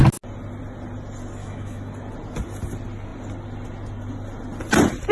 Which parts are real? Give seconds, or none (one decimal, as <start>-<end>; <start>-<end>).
0.0-1.4; 1.9-5.1